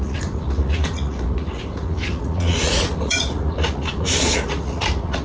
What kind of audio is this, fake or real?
fake